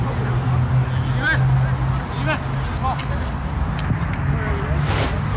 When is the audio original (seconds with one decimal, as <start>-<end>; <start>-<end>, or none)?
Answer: 0.0-5.4